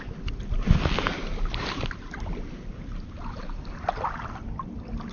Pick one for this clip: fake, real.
real